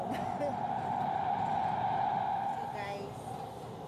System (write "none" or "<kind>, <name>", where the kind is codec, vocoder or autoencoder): none